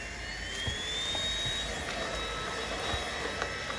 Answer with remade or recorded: recorded